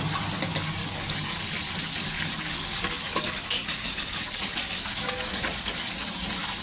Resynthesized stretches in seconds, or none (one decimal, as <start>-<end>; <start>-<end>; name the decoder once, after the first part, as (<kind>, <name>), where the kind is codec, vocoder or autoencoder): 0.8-1.4 (codec, DAC); 2.0-6.0